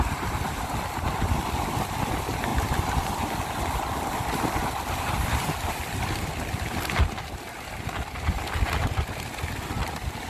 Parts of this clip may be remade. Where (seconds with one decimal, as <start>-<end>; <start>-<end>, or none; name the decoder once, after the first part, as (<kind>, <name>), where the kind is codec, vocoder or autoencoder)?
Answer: none